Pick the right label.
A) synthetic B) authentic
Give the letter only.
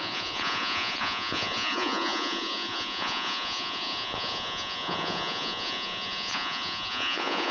A